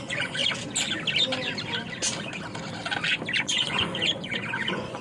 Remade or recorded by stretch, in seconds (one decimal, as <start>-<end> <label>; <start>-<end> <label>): 0.0-0.4 remade; 0.4-3.4 recorded; 3.4-5.0 remade